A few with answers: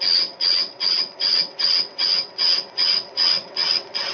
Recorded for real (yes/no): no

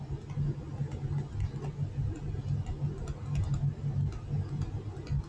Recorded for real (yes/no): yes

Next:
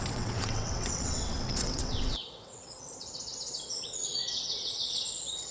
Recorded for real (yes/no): no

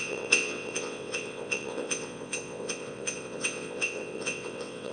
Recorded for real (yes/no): no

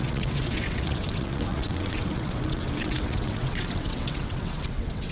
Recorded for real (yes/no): no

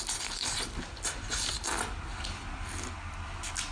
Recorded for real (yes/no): yes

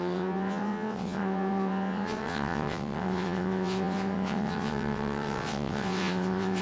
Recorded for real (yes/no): no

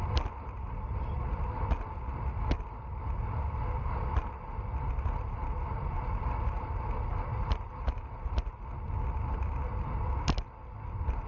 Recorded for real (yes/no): yes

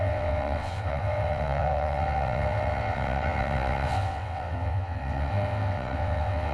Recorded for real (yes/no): no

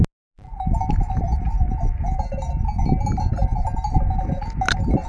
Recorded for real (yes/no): yes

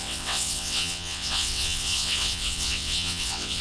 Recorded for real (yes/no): no